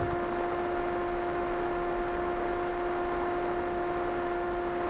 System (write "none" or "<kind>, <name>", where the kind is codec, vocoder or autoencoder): none